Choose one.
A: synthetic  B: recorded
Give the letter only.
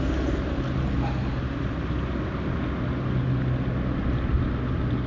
B